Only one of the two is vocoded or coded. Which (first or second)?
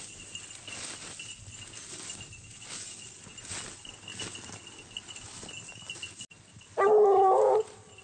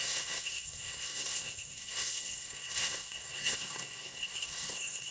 second